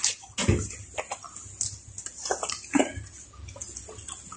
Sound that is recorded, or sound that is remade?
recorded